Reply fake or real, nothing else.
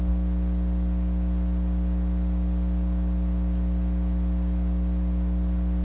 real